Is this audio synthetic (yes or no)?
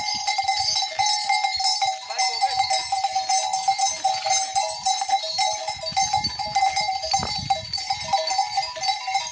no